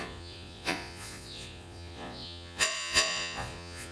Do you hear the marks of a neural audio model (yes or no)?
yes